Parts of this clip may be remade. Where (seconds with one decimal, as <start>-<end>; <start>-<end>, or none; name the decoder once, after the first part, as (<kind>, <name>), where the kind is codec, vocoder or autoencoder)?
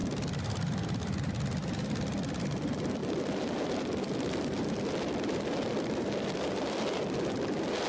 none